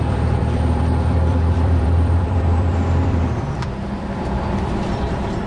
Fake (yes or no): yes